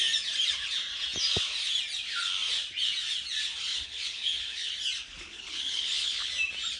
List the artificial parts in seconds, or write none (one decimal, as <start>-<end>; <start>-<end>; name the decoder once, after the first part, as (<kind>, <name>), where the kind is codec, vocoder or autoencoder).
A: 3.7-4.7 (codec, HILCodec); 5.3-6.3